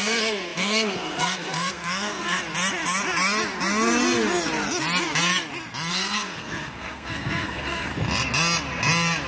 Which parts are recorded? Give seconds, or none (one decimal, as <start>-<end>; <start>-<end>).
2.4-5.9; 7.9-9.3

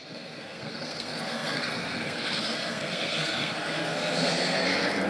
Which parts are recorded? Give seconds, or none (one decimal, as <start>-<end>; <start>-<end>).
none

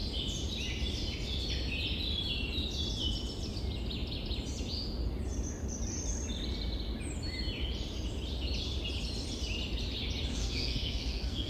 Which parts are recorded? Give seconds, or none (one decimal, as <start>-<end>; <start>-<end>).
0.0-10.3

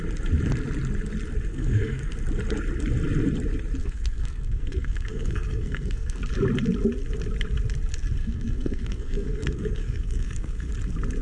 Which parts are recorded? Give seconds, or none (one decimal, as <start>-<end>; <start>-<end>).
0.0-1.5; 2.1-3.8; 6.2-8.2; 10.7-11.2

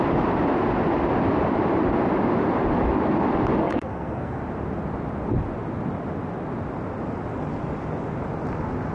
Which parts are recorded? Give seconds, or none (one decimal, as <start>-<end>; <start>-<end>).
0.0-3.6; 4.4-8.9

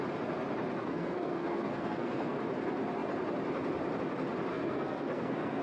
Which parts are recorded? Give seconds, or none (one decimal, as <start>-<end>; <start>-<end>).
0.0-0.8; 2.4-4.5

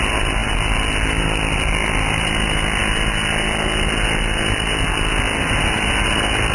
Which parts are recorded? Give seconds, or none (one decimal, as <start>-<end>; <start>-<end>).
0.0-6.5